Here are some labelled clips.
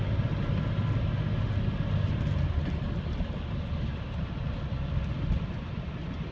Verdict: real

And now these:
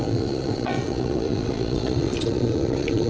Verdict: fake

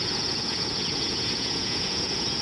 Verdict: fake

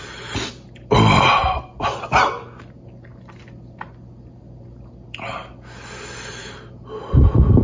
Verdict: real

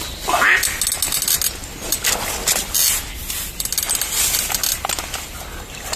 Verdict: real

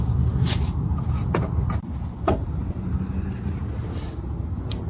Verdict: real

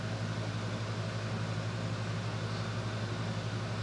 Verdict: real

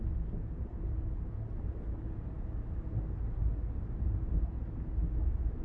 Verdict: real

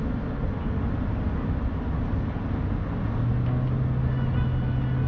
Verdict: real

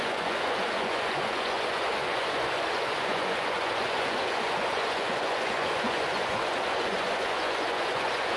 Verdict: fake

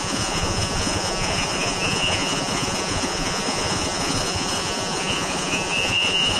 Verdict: fake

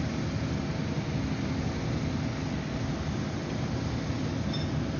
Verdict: real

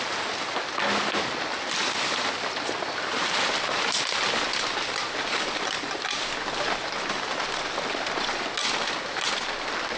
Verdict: real